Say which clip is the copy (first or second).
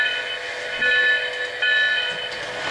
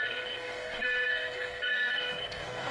second